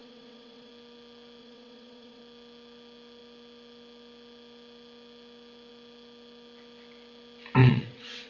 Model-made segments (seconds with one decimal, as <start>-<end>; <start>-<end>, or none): 0.0-0.7; 1.4-2.2; 7.6-8.3